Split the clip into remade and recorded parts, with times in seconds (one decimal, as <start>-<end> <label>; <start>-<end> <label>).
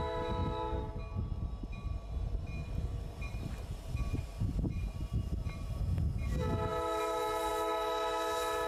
0.0-2.9 recorded; 2.9-5.8 remade; 5.8-8.7 recorded